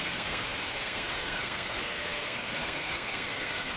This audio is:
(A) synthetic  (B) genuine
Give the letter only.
A